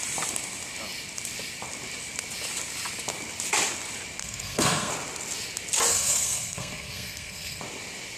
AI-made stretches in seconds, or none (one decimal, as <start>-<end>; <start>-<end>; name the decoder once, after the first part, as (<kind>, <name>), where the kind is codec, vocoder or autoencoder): 4.2-4.9 (codec, SNAC); 5.9-7.6